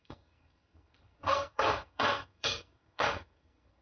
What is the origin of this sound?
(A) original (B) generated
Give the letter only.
B